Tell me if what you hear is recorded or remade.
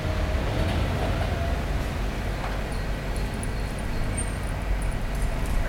recorded